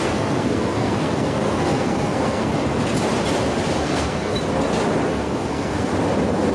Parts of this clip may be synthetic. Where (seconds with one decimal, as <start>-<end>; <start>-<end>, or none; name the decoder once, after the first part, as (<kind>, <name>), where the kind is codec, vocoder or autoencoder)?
0.0-2.5 (codec, SNAC); 3.8-4.3; 5.1-5.9